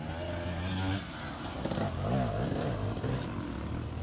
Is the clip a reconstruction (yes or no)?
no